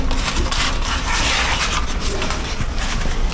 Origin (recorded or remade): recorded